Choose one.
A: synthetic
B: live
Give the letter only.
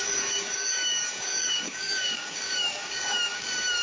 A